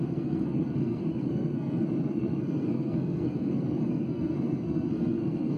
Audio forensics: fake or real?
fake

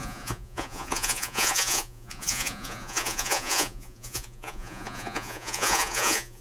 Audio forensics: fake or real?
fake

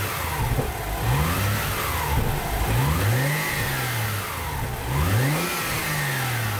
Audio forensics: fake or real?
real